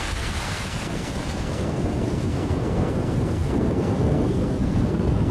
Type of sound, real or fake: fake